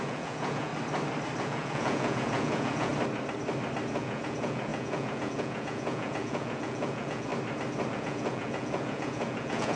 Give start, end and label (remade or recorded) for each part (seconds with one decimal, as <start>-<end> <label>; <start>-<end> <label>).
0.0-0.7 remade; 0.7-1.4 recorded; 1.4-2.9 remade; 2.9-3.9 recorded; 3.9-7.3 remade; 7.3-7.9 recorded; 7.9-9.8 remade